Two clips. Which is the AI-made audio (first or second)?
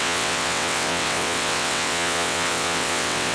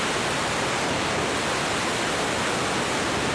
first